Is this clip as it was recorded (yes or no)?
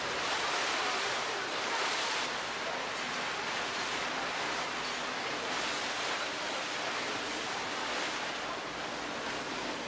no